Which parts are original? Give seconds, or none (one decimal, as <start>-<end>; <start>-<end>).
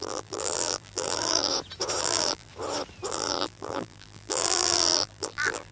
1.5-2.0; 2.5-3.1